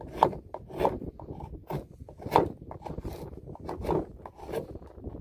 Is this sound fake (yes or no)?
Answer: no